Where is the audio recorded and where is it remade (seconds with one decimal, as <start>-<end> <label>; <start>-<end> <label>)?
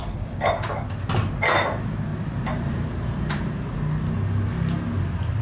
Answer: 0.0-2.1 recorded; 2.1-3.6 remade; 3.6-5.4 recorded